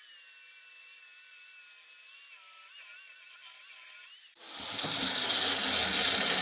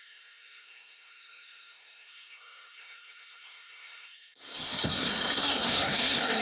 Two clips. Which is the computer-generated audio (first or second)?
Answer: second